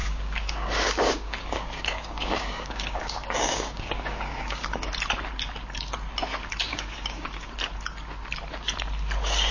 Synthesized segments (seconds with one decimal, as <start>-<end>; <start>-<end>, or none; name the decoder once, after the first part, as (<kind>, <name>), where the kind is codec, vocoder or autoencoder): 0.0-4.9 (codec, DAC); 6.7-7.5